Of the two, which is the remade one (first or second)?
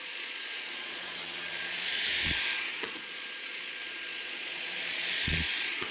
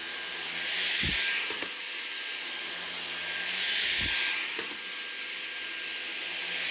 first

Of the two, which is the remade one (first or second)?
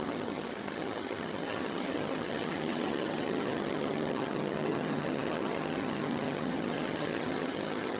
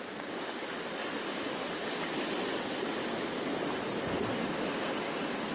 first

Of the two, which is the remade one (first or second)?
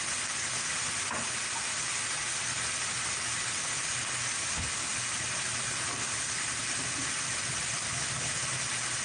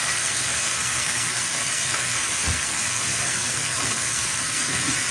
second